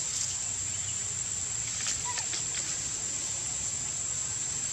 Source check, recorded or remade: recorded